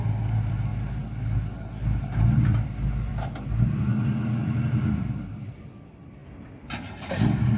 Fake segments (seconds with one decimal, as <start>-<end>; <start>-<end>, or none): 0.0-0.7; 2.4-3.1; 3.7-6.2